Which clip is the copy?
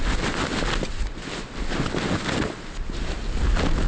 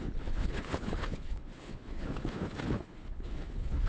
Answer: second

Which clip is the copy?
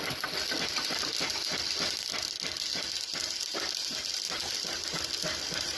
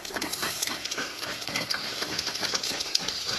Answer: second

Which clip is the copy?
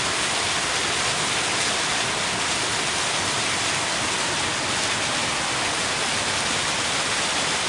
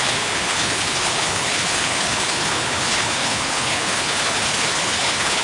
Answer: second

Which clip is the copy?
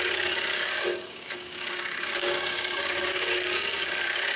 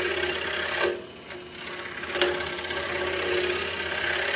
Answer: first